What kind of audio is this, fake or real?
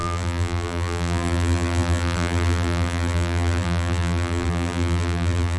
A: fake